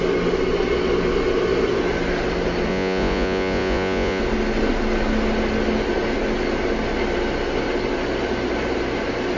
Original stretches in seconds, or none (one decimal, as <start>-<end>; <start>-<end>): 0.0-2.7; 4.2-9.4